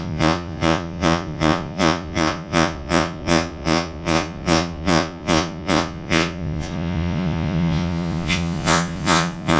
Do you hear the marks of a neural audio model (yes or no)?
yes